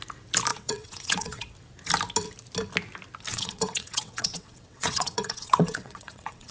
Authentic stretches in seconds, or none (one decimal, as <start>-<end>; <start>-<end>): 0.0-0.5; 1.5-3.3